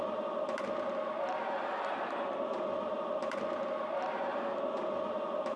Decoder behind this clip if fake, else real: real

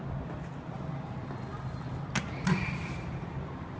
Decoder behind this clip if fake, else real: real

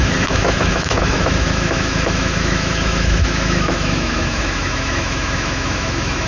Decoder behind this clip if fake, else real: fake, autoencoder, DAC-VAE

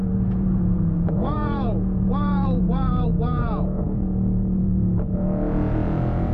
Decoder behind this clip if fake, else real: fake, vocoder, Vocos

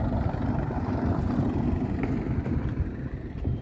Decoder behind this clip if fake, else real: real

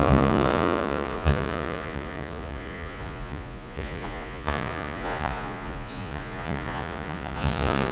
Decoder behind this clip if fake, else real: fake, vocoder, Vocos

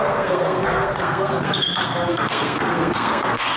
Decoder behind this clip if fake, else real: fake, codec, SNAC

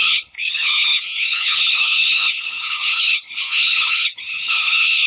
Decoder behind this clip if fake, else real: fake, codec, HILCodec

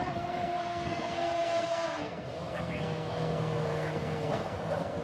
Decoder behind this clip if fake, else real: fake, codec, SNAC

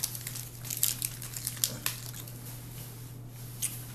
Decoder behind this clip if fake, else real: real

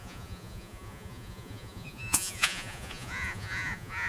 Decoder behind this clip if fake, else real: fake, vocoder, Vocos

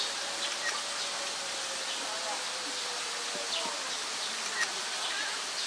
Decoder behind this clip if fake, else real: real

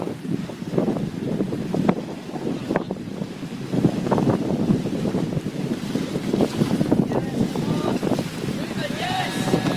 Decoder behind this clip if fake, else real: fake, vocoder, BigVGAN v2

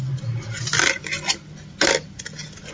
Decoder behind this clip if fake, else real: real